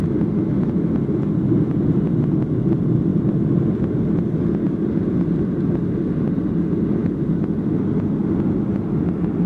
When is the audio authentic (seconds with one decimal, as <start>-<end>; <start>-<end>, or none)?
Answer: 0.0-3.1; 4.1-9.5